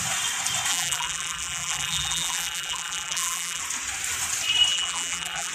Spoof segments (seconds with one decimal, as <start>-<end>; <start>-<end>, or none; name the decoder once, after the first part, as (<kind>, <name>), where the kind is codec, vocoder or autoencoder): 0.7-3.6 (vocoder, BigVGAN v2); 4.7-5.5